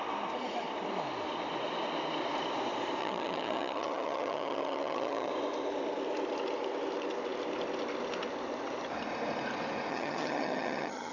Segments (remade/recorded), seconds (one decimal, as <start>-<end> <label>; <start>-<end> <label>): 0.0-3.0 recorded; 3.0-5.3 remade; 5.3-9.9 recorded; 9.9-11.1 remade